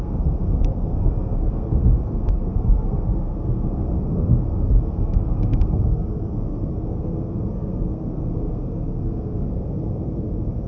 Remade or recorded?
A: remade